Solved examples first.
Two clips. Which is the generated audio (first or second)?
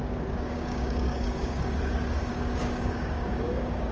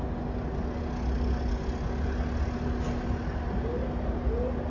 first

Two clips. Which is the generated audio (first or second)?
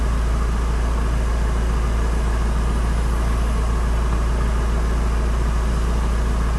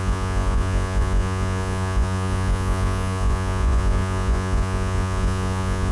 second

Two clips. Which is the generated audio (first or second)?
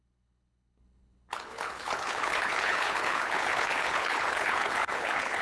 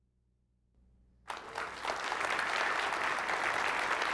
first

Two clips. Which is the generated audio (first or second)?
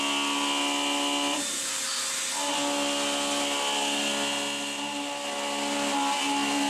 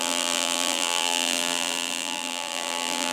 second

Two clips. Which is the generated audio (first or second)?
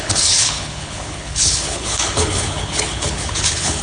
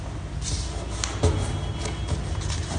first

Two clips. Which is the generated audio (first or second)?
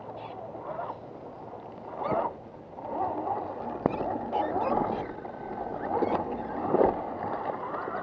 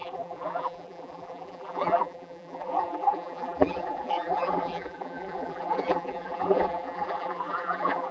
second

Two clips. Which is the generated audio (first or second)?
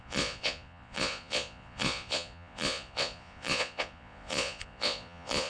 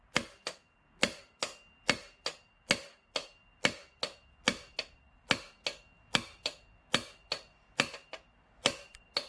first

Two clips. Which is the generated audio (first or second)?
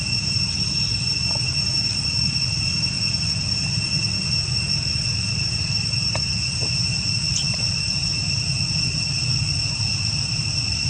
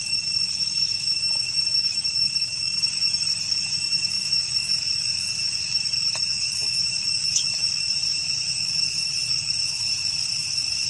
second